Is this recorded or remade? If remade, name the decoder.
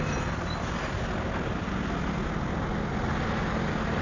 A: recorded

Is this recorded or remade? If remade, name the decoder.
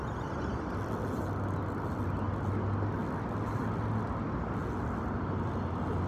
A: recorded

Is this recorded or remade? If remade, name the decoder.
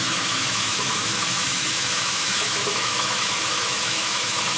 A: remade, autoencoder, DAC-VAE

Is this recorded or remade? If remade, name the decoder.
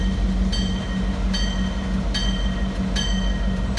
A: recorded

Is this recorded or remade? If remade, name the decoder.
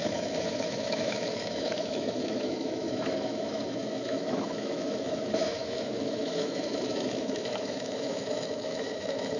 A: remade, autoencoder, DAC-VAE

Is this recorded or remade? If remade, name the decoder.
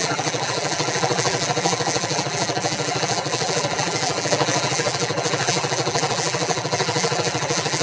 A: remade, vocoder, BigVGAN v2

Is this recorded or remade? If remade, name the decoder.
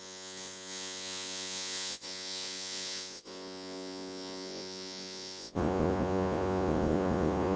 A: remade, vocoder, Vocos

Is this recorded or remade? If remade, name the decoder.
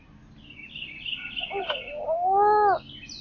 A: recorded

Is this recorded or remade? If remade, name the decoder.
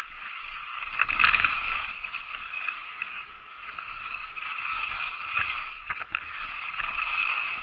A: remade, codec, DAC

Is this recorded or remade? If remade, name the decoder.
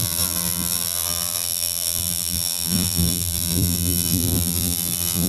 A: remade, vocoder, BigVGAN v2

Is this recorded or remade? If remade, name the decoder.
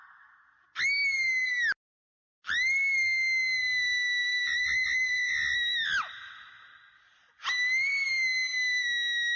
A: recorded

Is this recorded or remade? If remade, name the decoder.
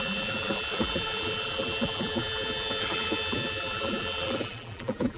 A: remade, vocoder, BigVGAN v2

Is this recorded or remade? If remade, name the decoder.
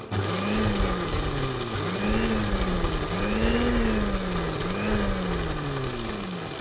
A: recorded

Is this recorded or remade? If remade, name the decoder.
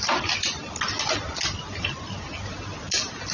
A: recorded